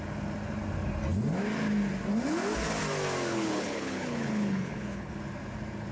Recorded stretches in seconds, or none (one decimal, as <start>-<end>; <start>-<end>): 0.0-3.3; 5.2-5.9